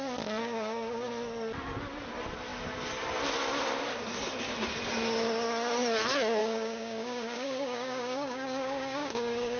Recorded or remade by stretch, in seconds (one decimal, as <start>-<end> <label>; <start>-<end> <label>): 0.0-0.4 recorded; 0.4-1.1 remade; 1.1-6.4 recorded; 6.4-9.6 remade